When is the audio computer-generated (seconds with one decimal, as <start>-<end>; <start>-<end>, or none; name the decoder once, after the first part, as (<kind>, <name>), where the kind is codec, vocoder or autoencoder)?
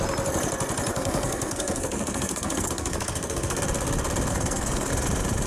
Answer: 0.9-3.6 (codec, SNAC); 4.3-4.9